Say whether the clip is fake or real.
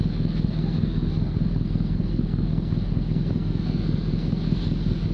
fake